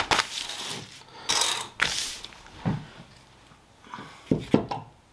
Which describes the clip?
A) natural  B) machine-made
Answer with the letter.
A